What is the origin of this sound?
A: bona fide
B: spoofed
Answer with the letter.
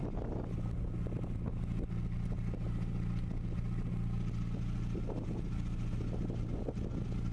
A